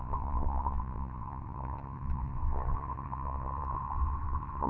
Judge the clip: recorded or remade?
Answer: remade